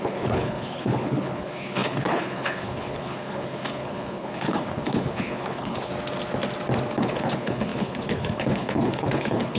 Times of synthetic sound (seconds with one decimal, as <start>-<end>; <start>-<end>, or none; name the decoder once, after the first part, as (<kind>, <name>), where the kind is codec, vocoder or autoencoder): 0.0-5.9 (codec, HILCodec); 7.0-9.6